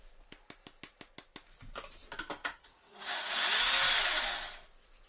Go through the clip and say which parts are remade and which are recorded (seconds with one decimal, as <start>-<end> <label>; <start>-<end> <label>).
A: 0.0-2.4 recorded; 2.4-3.3 remade; 3.3-5.1 recorded